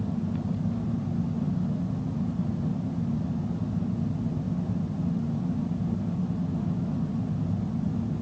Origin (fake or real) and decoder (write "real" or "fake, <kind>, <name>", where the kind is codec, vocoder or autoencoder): real